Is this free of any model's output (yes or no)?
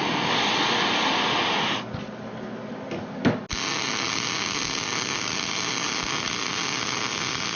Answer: yes